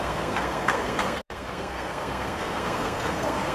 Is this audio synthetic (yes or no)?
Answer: yes